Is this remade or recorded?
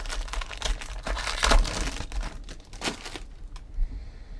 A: recorded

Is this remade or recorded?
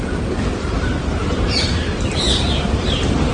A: remade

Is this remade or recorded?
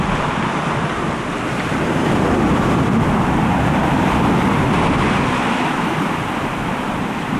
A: recorded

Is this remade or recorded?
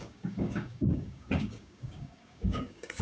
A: remade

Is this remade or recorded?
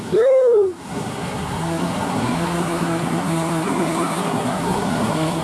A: remade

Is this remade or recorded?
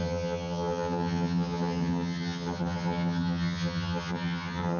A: remade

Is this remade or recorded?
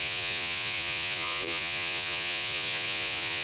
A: remade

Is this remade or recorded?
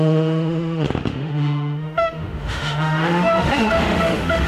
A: remade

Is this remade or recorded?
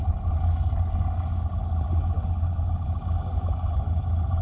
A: recorded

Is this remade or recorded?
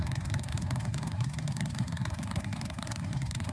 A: remade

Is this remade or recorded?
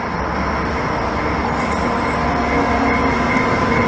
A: recorded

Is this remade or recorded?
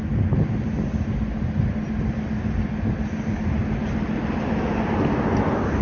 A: recorded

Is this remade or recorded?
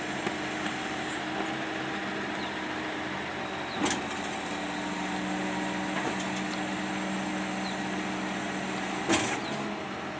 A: recorded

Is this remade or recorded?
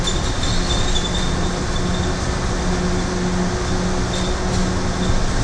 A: recorded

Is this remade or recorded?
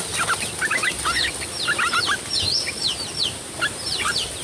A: recorded